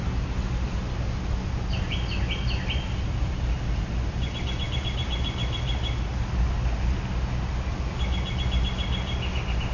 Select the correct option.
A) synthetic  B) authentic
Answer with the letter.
B